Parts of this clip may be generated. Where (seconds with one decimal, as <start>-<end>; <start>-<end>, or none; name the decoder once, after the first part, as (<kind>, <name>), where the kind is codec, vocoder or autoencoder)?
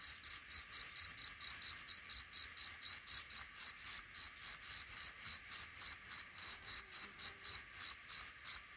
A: 6.4-7.3 (codec, DAC)